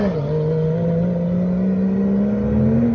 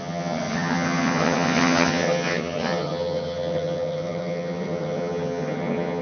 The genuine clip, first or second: first